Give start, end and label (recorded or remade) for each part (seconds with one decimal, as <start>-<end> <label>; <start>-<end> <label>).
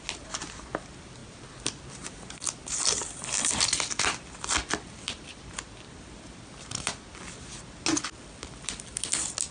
0.0-9.5 recorded